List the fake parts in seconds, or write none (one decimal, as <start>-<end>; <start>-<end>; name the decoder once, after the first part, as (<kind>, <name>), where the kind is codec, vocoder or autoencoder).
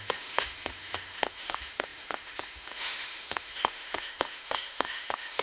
0.0-5.4 (autoencoder, DAC-VAE)